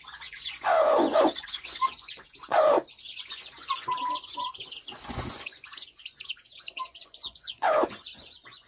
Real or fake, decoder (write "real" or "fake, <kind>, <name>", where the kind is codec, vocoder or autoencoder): fake, vocoder, Vocos